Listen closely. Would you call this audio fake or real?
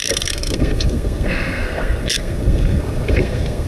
fake